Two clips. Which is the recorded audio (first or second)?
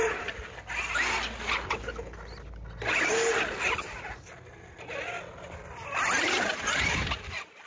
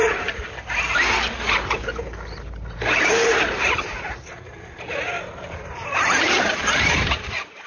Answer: first